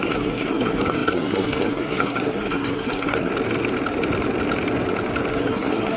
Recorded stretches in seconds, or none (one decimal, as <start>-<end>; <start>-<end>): 3.3-5.3